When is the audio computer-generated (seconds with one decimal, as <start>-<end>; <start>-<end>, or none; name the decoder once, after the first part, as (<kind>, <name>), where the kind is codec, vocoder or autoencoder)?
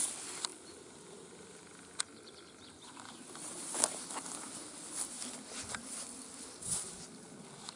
none